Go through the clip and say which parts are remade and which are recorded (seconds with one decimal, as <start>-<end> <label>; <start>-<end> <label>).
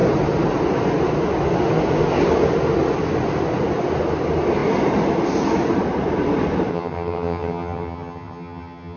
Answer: 0.0-6.7 recorded; 6.7-9.0 remade